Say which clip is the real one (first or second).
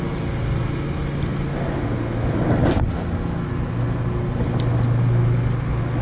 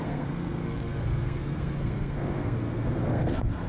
first